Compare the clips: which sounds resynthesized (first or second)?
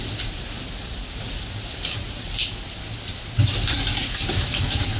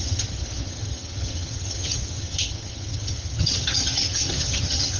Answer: second